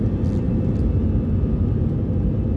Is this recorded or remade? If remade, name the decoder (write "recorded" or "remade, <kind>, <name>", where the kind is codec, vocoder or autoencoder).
recorded